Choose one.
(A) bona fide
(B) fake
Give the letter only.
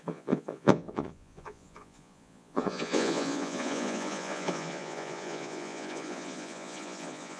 B